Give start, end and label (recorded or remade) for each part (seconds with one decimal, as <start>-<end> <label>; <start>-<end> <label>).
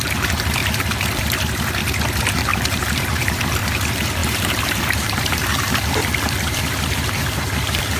0.0-2.5 recorded; 2.5-3.4 remade; 3.4-4.2 recorded; 4.2-5.4 remade; 5.4-8.0 recorded